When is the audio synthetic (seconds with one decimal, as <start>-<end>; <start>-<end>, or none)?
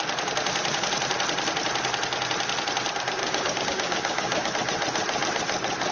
3.2-4.5